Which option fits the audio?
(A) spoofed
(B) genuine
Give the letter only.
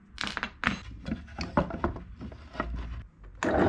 B